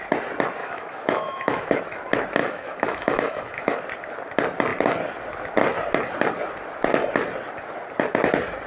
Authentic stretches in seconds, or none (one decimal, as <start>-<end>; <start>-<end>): 0.0-0.6; 1.8-2.4; 3.8-8.7